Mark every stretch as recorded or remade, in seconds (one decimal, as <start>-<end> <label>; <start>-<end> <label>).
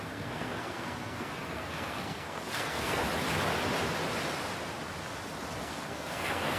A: 0.0-3.0 remade; 3.0-5.6 recorded; 5.6-6.6 remade